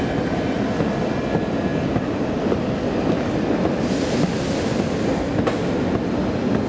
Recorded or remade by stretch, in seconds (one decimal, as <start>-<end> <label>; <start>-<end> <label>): 0.0-6.7 recorded